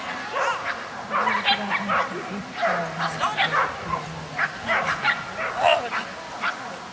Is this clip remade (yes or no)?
no